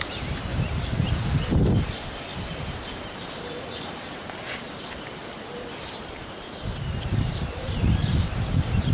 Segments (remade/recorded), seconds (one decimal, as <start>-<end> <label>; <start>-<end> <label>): 0.0-8.9 remade